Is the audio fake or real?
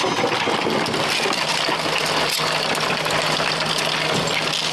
real